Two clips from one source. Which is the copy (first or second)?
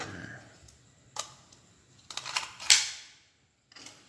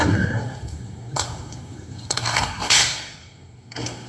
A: second